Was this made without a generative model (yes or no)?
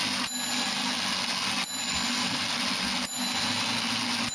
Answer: yes